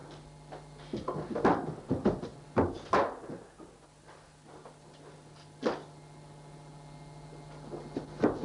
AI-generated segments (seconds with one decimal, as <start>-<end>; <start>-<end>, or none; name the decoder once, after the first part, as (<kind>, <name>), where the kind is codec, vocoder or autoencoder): none